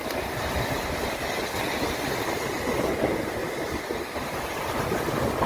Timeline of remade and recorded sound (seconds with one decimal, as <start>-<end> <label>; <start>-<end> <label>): 0.0-1.6 remade; 1.6-2.7 recorded; 2.7-3.4 remade; 3.4-5.5 recorded